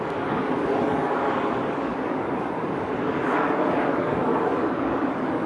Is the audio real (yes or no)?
no